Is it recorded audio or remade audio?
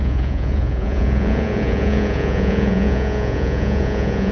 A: remade